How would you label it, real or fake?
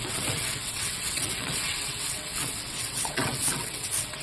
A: fake